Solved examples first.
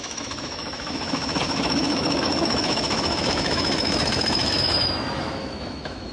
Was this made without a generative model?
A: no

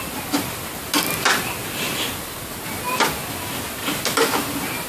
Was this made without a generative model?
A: yes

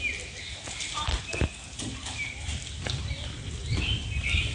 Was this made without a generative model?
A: yes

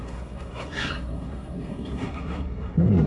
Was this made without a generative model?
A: no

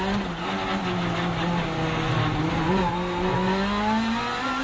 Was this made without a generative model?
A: yes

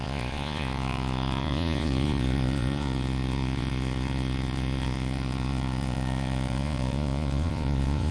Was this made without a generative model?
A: no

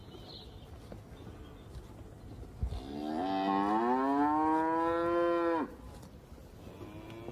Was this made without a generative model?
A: yes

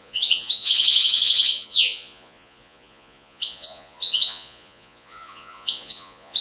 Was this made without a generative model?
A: no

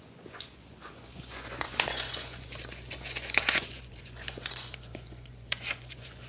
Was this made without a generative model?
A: no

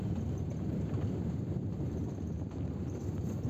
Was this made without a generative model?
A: no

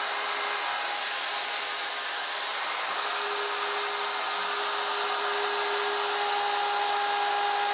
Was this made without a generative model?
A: yes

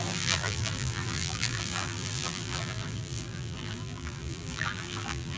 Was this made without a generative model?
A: no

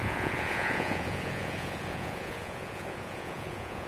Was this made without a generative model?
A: no